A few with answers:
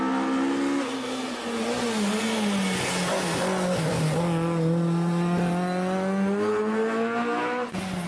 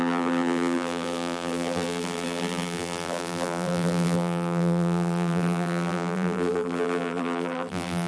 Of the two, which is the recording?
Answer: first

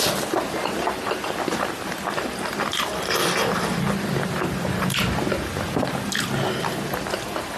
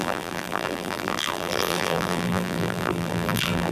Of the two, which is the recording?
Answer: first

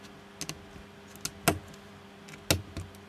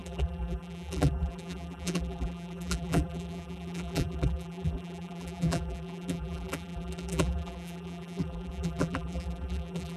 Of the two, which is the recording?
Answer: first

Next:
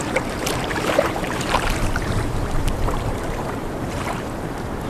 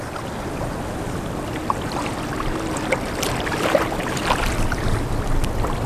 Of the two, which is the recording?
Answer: second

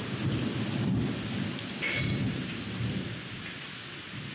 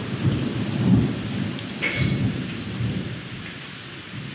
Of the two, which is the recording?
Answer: first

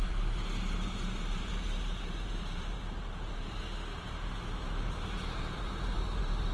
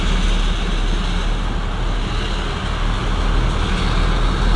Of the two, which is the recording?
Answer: second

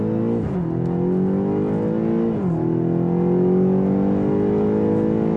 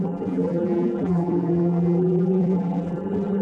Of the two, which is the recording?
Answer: first